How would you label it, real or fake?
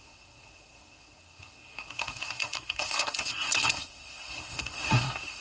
fake